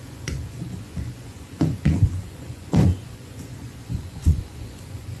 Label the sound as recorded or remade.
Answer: remade